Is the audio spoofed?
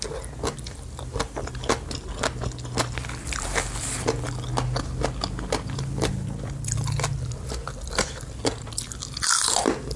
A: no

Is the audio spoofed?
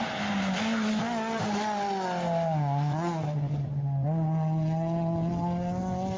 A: no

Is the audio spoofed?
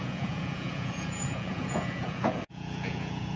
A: yes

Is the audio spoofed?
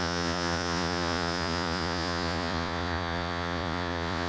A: yes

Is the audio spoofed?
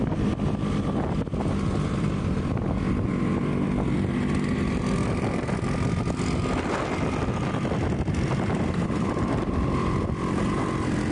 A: no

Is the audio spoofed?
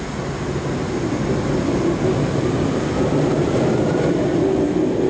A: no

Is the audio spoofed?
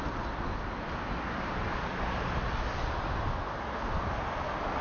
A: no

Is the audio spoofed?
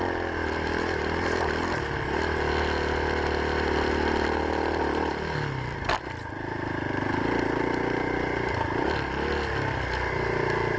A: no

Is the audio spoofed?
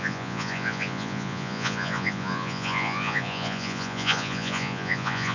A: yes